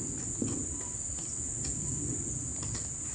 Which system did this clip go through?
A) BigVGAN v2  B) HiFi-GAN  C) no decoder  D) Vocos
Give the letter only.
C